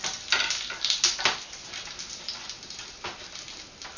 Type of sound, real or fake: real